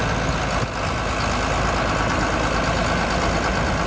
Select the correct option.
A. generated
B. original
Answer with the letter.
B